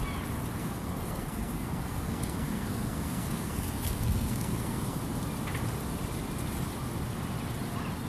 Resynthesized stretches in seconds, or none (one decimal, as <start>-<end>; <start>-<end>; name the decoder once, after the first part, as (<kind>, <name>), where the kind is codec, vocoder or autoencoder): 0.6-5.0 (codec, SNAC)